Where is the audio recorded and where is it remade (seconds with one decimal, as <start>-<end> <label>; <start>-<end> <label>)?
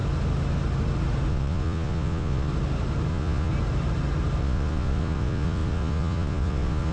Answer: 0.0-1.3 recorded; 1.3-2.5 remade; 2.5-3.1 recorded; 3.1-3.5 remade; 3.5-4.4 recorded; 4.4-6.9 remade